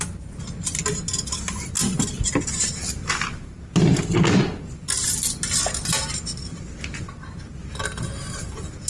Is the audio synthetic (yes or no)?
no